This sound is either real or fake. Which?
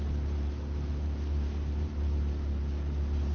real